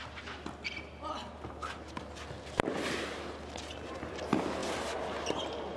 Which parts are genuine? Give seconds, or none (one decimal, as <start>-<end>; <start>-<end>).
0.0-5.8